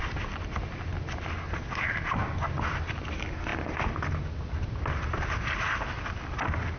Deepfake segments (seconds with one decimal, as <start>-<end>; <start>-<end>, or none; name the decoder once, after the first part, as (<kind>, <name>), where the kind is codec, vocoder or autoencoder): none

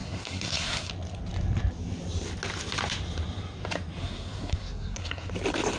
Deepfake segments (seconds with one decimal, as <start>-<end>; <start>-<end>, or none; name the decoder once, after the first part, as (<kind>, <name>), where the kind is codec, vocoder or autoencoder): 0.0-0.9 (codec, SNAC); 4.0-5.3

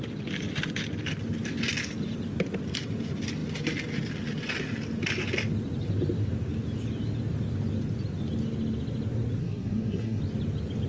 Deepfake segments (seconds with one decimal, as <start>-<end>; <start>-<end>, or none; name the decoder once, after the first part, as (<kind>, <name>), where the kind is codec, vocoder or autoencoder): 9.4-10.2 (codec, SNAC)

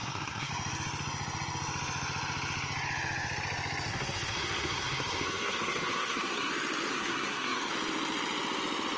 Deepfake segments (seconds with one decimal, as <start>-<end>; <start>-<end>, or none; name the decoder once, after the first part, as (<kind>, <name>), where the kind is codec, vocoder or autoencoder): 0.0-0.5 (codec, SNAC); 3.9-6.5; 6.9-7.7

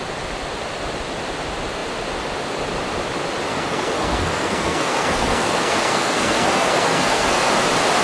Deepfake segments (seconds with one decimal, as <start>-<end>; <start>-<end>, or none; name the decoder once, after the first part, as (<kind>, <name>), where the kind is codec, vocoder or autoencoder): 3.5-7.5 (codec, SNAC)

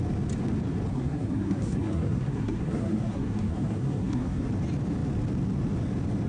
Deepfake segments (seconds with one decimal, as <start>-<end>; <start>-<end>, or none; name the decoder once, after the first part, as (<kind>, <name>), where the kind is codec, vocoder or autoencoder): 0.9-4.4 (codec, SNAC)

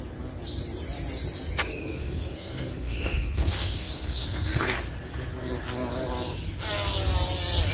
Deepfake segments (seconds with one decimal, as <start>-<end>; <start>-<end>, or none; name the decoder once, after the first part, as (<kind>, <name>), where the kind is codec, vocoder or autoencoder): 1.8-4.6 (codec, SNAC)

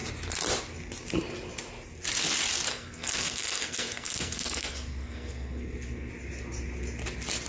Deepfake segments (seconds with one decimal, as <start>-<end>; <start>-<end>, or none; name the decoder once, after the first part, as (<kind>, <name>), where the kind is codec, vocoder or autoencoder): 2.7-6.1 (codec, SNAC)